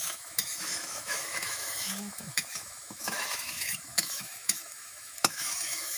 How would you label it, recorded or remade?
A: remade